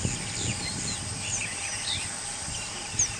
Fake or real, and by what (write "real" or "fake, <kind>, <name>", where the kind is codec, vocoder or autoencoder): real